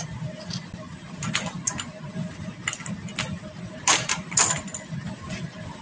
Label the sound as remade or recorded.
recorded